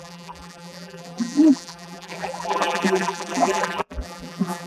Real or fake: fake